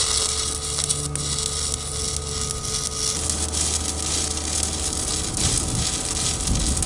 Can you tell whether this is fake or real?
real